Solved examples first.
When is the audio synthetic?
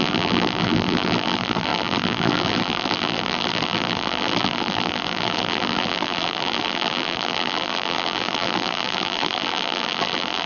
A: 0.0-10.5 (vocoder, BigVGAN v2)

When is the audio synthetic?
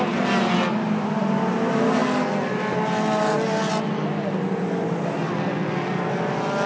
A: none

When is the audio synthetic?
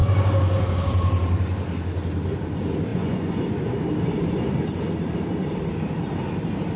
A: 2.9-3.4 (vocoder, Vocos)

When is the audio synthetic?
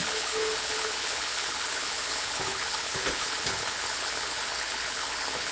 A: 0.0-5.5 (codec, HILCodec)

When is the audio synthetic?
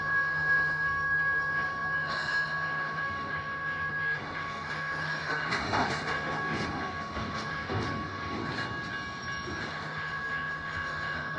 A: 0.0-8.4 (autoencoder, DAC-VAE); 9.6-11.4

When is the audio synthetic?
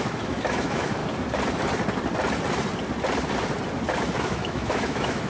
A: 0.0-1.0 (autoencoder, DAC-VAE); 4.2-5.3